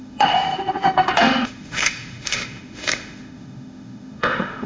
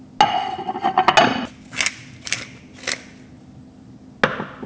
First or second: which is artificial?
first